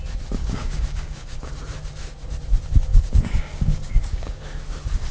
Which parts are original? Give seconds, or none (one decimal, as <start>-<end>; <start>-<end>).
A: 0.0-0.4; 1.5-2.9; 4.6-5.1